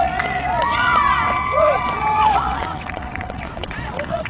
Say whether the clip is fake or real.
fake